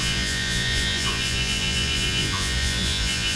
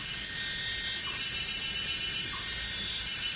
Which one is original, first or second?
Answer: second